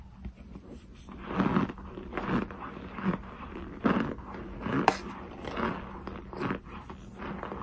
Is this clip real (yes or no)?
yes